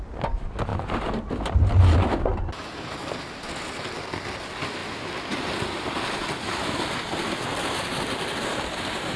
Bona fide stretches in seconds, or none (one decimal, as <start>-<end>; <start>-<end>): 0.0-9.2